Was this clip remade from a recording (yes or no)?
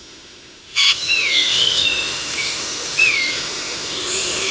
yes